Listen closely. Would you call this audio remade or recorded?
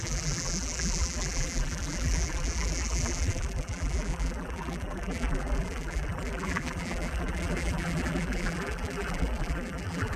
remade